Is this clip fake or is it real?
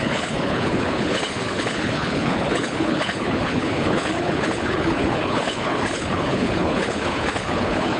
fake